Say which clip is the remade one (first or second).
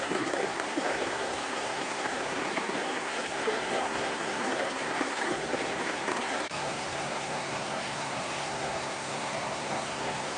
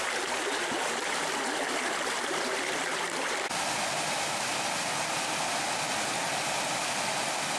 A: first